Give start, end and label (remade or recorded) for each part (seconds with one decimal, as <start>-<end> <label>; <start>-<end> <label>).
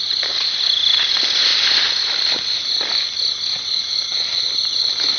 0.0-5.2 recorded